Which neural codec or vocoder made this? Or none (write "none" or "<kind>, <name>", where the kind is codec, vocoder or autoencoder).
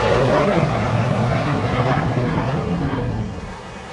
codec, SNAC